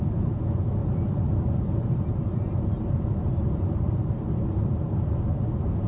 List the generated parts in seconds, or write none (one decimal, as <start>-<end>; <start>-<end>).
0.8-1.6; 2.3-5.9